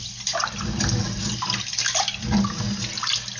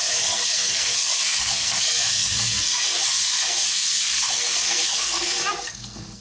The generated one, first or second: second